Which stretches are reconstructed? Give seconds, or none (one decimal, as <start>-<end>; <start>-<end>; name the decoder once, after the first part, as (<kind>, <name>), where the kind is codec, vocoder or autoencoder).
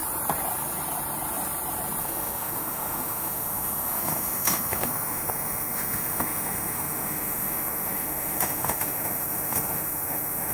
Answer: 2.0-10.5 (autoencoder, DAC-VAE)